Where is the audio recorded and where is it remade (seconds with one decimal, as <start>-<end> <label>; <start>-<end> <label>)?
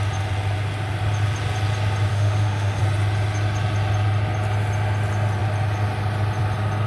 0.0-2.1 recorded; 2.1-2.8 remade; 2.8-6.9 recorded